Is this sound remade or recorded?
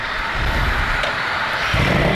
remade